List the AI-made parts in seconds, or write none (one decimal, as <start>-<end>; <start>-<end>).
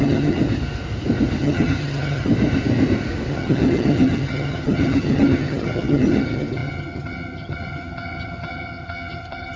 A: 0.0-0.4; 1.4-2.3; 3.3-9.6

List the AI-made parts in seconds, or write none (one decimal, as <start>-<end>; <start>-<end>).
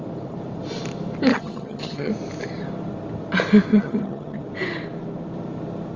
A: 1.3-2.1; 3.7-4.4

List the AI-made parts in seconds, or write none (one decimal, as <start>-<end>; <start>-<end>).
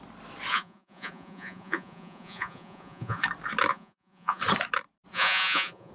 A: 0.5-3.2; 3.7-4.4; 5.1-5.9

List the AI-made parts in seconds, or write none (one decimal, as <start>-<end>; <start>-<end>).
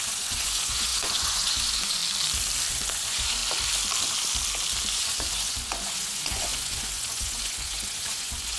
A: 0.0-2.0; 2.7-3.4; 4.9-8.6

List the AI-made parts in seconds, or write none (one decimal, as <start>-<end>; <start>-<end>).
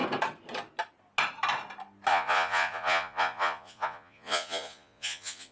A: 2.1-5.5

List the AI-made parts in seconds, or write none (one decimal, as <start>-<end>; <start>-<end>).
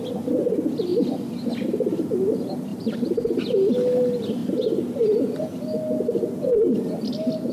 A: 2.7-3.4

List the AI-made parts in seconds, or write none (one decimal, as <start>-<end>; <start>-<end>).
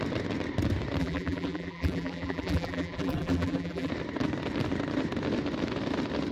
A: 1.0-3.9